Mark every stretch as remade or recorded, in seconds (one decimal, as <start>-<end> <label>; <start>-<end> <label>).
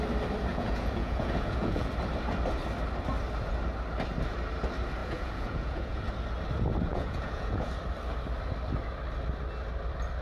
0.0-0.5 recorded; 0.5-1.9 remade; 1.9-5.0 recorded; 5.0-6.1 remade; 6.1-6.9 recorded; 6.9-7.7 remade; 7.7-10.2 recorded